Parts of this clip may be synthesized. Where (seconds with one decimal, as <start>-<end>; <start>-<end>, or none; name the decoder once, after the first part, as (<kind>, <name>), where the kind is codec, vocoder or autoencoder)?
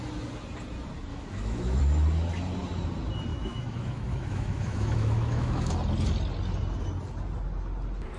1.1-1.8 (autoencoder, DAC-VAE); 3.3-5.7